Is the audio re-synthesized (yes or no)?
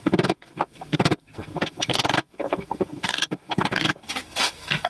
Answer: yes